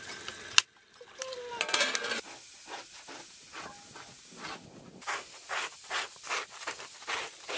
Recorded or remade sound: recorded